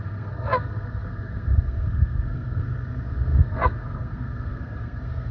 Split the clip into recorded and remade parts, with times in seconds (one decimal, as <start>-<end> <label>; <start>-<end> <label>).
0.0-5.3 remade